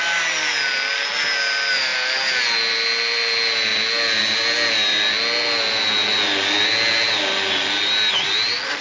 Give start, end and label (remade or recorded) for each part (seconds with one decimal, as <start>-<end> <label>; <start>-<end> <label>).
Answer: 0.0-8.8 recorded